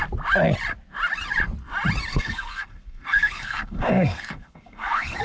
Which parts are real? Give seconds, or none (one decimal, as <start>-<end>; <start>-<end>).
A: 0.0-2.1